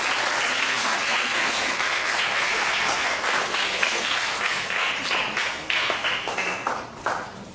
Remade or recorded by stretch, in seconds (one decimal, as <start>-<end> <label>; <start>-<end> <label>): 0.0-0.5 recorded; 0.5-4.9 remade; 4.9-5.4 recorded; 5.4-6.7 remade; 6.7-7.5 recorded